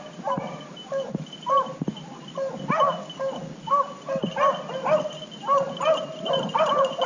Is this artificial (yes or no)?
no